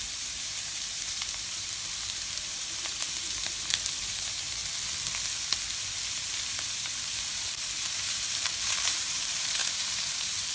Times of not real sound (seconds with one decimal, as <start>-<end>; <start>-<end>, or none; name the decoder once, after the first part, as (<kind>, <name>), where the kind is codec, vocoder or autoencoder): 0.0-4.6 (vocoder, BigVGAN v2); 6.1-10.5